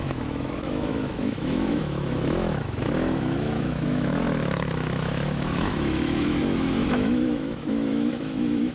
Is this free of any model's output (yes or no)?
no